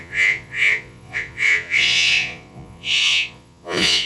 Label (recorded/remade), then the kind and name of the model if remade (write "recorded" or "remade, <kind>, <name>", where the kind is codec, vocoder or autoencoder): remade, vocoder, Vocos